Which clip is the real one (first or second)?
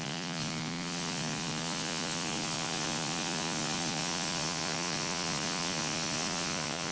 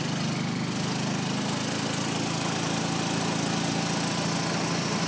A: second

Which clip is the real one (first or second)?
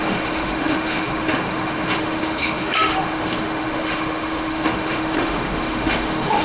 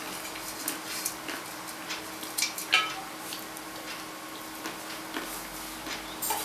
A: second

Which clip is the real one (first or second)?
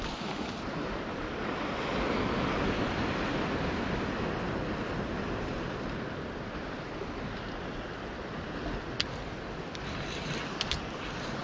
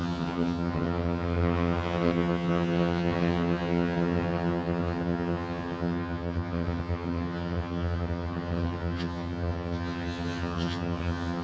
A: first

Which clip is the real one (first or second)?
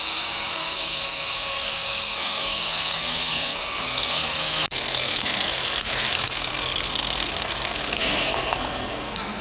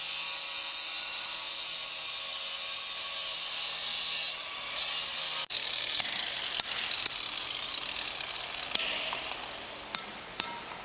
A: second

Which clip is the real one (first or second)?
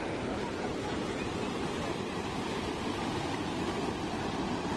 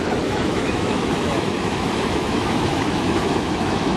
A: first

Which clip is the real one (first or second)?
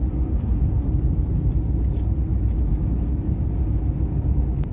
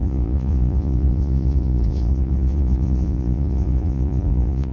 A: first